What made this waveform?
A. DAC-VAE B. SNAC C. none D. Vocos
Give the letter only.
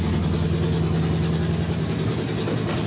C